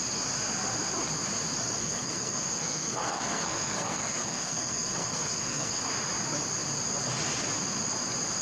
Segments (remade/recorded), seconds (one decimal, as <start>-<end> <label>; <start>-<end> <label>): 0.0-1.8 recorded; 1.8-5.8 remade; 5.8-8.4 recorded